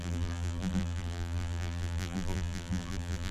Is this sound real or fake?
fake